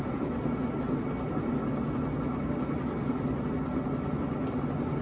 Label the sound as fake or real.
real